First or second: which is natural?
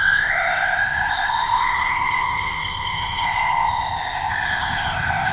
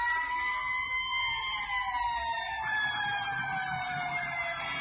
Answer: second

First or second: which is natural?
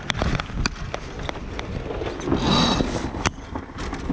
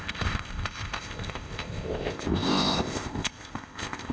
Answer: first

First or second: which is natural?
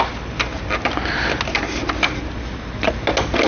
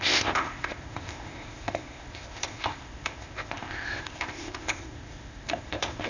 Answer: first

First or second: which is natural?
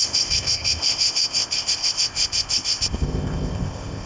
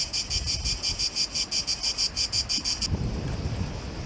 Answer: second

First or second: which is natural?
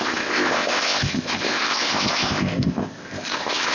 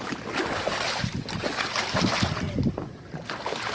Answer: second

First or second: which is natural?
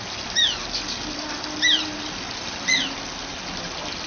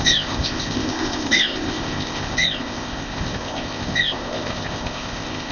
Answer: first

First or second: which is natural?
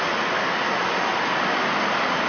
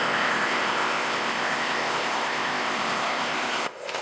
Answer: first